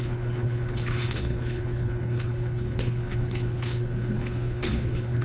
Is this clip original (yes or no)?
no